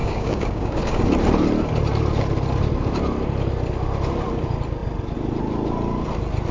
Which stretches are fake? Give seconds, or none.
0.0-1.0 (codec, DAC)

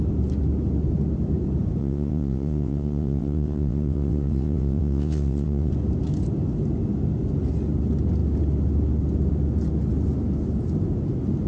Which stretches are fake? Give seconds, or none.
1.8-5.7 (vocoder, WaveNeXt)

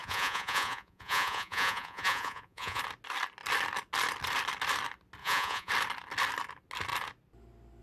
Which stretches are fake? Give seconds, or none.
0.0-2.8 (vocoder, Vocos); 5.2-5.7